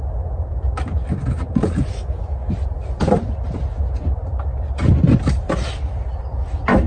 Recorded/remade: recorded